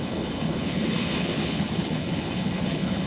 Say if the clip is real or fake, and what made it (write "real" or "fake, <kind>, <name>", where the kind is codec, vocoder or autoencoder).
fake, codec, HILCodec